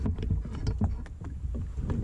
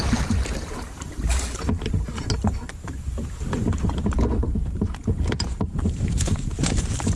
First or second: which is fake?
second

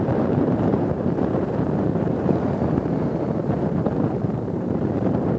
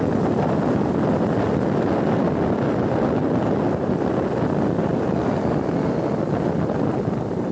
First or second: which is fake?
first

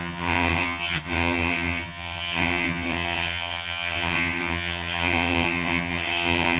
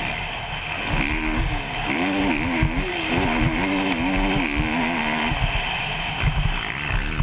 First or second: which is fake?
first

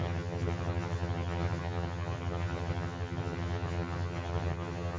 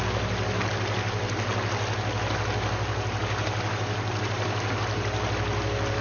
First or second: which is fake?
first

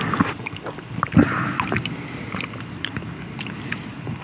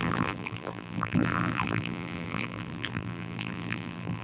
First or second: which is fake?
second